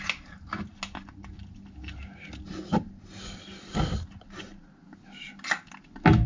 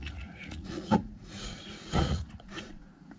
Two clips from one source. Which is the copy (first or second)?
second